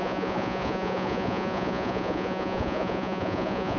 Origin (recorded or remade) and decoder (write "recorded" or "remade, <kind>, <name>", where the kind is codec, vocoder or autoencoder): remade, vocoder, Vocos